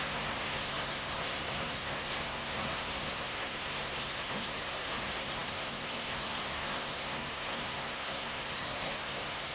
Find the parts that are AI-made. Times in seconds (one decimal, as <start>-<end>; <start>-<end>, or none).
0.0-9.5